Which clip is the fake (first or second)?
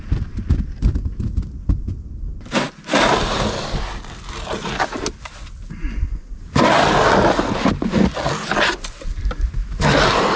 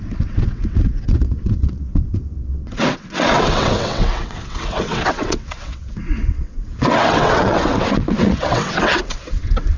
second